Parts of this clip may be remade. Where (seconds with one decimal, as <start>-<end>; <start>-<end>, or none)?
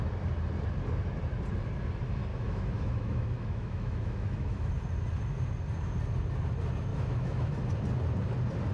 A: 2.3-4.7; 6.9-7.5